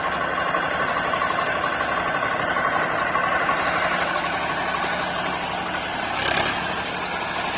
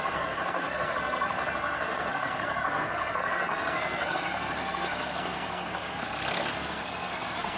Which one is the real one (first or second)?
first